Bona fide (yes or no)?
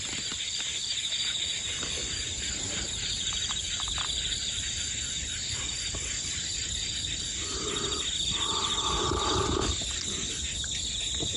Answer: yes